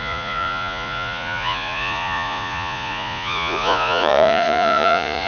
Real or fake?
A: fake